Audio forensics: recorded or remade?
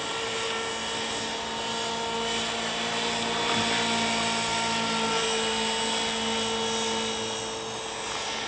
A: recorded